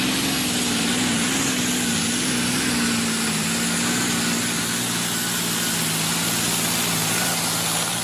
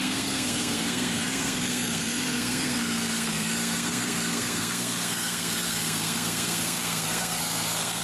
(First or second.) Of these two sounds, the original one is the first